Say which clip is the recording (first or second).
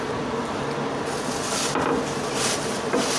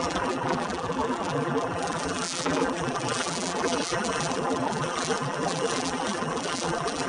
first